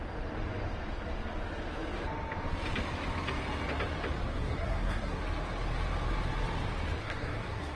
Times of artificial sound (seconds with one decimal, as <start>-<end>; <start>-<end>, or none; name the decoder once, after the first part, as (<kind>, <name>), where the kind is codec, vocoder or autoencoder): 4.3-5.2 (codec, SNAC); 7.0-7.8